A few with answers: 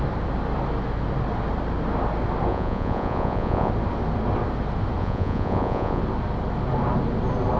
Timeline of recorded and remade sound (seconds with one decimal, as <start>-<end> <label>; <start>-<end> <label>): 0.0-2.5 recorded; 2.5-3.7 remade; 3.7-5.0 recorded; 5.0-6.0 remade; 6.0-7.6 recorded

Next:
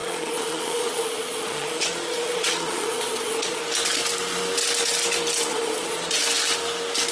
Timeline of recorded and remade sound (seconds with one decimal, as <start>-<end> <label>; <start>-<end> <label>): 0.0-3.6 remade; 3.6-5.5 recorded; 5.5-6.2 remade; 6.2-7.1 recorded

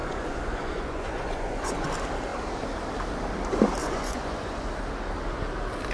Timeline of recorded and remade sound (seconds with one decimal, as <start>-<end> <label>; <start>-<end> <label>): 0.0-1.9 remade; 1.9-3.8 recorded; 3.8-4.7 remade; 4.7-5.9 recorded

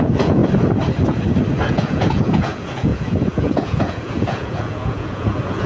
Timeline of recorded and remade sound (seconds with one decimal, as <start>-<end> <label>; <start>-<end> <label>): 0.0-0.4 remade; 0.4-1.7 recorded; 1.7-5.7 remade